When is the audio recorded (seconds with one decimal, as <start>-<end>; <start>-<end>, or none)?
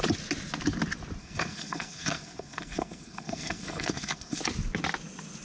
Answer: 0.0-1.2; 4.4-5.4